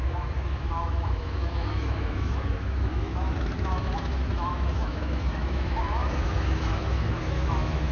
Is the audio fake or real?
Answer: fake